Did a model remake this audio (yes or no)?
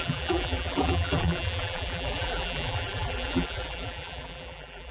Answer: yes